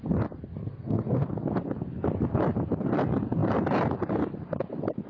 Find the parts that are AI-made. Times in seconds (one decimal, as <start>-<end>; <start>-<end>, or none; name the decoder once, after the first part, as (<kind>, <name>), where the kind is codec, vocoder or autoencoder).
0.7-1.3 (codec, SNAC)